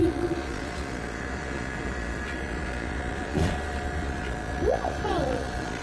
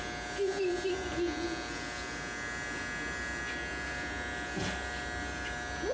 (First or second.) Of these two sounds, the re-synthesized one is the first